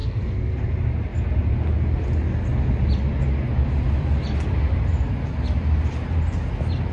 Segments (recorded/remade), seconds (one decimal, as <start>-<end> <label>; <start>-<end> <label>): 0.0-0.6 remade; 0.6-6.9 recorded